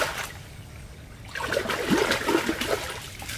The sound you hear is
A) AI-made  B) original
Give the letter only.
B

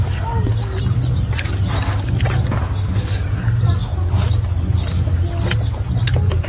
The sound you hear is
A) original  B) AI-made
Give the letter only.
A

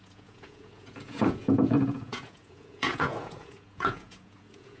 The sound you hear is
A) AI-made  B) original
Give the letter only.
A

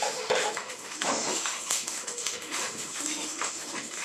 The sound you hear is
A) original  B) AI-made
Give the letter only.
B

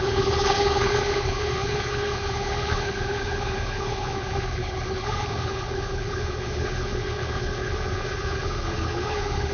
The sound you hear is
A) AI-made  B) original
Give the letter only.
A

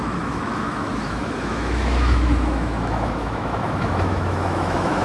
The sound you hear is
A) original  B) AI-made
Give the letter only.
B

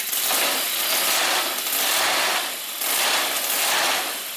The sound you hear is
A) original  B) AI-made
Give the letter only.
A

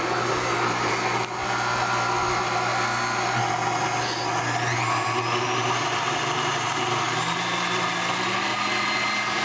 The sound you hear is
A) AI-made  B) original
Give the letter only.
B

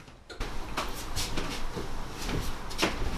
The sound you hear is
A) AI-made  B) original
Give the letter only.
B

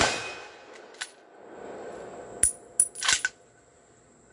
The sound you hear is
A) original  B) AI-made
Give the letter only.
A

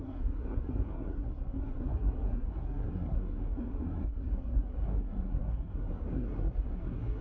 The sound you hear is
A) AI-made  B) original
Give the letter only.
A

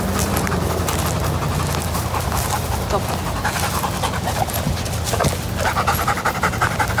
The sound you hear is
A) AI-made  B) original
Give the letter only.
B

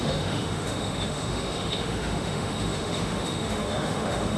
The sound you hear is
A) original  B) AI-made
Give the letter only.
B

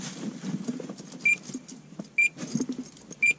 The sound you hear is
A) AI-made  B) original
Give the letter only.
B